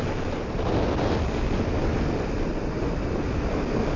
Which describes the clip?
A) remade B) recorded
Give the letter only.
B